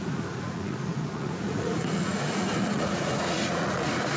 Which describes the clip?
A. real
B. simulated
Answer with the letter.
B